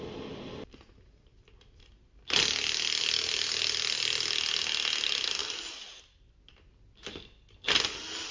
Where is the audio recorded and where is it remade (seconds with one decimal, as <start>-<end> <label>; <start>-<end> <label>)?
0.0-8.3 recorded